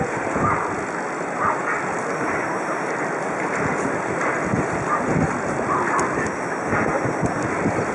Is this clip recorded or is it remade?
recorded